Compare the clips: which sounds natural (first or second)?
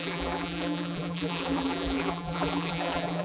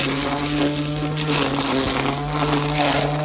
second